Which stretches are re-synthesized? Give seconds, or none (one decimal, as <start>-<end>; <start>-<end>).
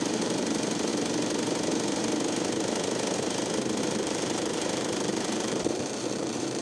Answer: 0.0-0.9; 3.8-6.6